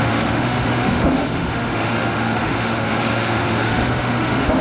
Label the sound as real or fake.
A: fake